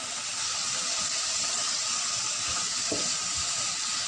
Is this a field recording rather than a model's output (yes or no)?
yes